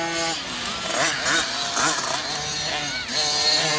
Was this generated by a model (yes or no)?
no